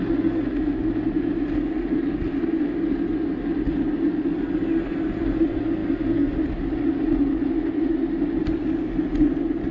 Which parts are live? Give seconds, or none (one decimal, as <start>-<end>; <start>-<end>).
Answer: 0.0-9.7